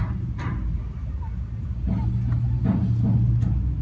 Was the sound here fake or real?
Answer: real